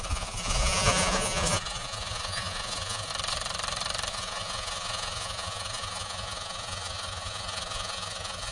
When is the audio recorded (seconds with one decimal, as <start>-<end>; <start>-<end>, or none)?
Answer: 3.1-4.1